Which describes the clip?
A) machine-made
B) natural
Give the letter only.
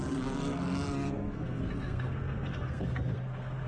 A